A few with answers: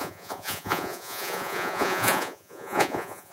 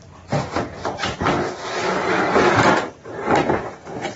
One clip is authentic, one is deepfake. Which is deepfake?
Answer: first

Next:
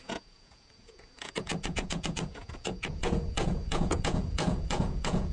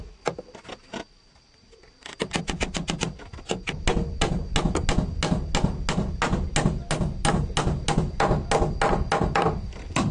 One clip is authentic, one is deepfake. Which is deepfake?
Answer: first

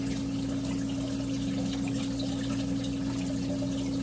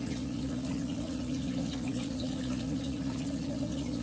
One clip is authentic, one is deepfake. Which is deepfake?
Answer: second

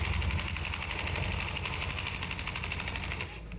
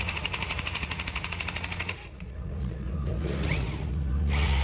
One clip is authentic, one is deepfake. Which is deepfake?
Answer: second